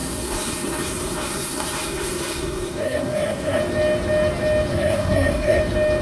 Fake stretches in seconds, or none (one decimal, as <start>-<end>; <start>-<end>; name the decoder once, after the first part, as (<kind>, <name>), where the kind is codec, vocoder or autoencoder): 0.0-3.6 (codec, SNAC); 4.7-5.6